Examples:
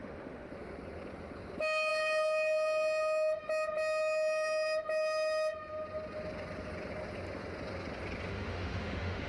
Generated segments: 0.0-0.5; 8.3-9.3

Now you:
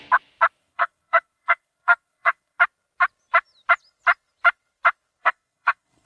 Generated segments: 0.6-2.6; 5.2-6.1

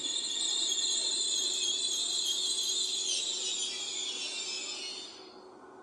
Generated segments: 0.0-3.0; 4.0-4.8

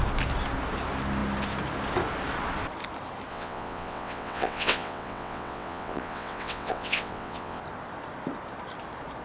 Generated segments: 3.3-7.6

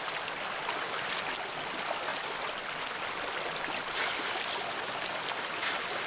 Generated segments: none

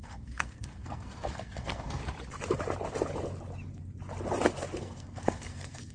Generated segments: 0.0-2.0; 4.8-5.9